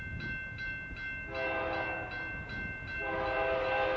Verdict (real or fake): real